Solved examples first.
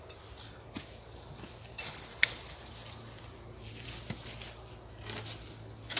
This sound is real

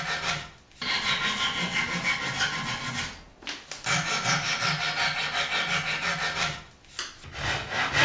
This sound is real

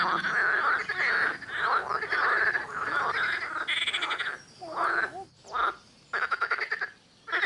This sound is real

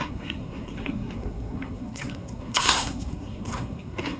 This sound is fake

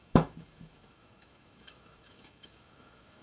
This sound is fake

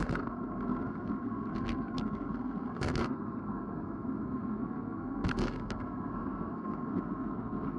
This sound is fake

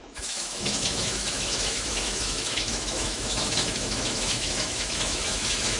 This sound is fake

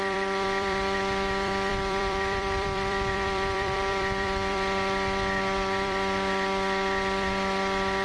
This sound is fake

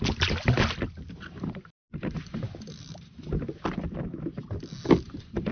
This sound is real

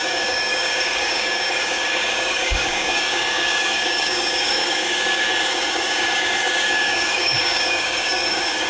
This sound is fake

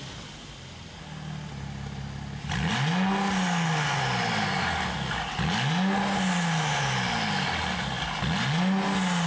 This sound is real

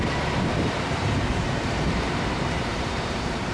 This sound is fake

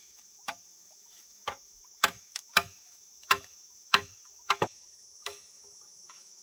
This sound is fake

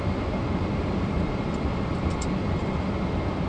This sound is fake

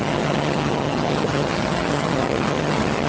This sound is fake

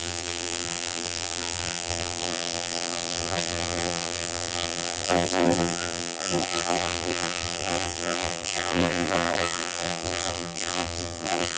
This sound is fake